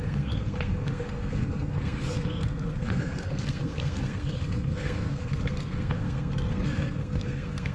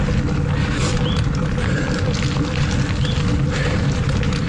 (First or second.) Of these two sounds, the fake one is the first